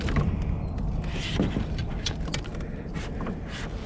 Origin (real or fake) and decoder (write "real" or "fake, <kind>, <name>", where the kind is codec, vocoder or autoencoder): real